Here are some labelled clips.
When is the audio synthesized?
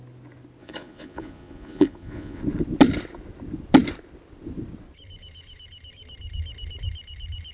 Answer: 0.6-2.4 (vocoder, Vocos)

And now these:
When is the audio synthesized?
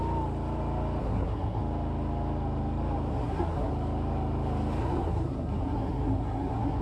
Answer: 1.0-1.6 (codec, SNAC); 3.1-3.7; 4.8-6.8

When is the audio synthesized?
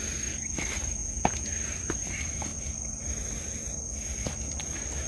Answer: 1.0-1.5 (vocoder, Vocos)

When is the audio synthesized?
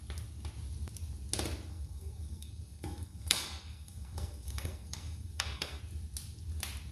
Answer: 1.7-5.8 (codec, SNAC)